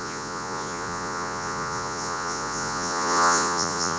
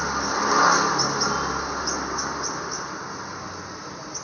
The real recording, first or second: second